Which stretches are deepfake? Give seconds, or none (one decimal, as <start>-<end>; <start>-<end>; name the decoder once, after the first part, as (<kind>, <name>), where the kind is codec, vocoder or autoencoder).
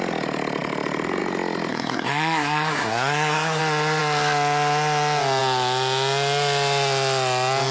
1.7-3.6 (codec, SNAC)